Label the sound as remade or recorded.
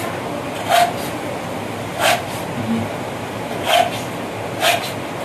recorded